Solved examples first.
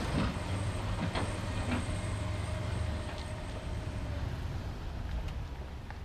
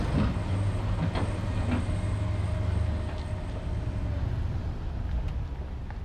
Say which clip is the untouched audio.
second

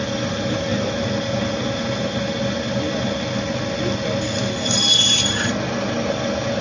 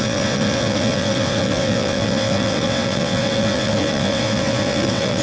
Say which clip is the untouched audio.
first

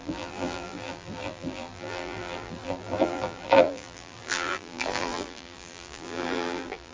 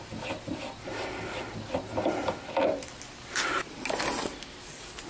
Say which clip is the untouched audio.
second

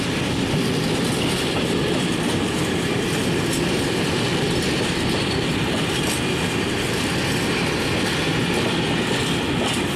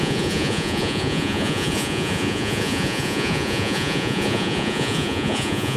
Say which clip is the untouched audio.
first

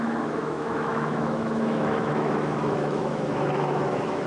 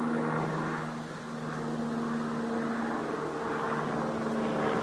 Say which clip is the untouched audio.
second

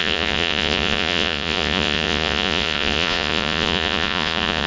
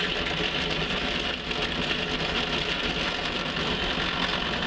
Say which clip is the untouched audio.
second